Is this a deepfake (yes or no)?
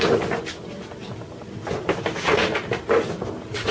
no